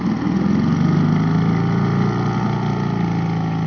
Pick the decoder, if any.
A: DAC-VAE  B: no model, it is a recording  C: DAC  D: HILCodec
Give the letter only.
B